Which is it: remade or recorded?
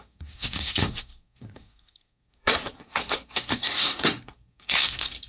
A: remade